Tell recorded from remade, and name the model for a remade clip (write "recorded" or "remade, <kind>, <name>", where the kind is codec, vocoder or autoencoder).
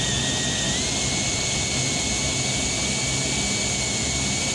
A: recorded